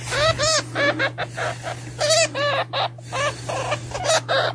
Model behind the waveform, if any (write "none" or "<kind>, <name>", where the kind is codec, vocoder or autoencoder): none